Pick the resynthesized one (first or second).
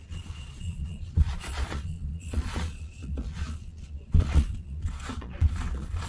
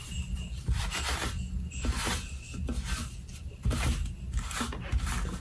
first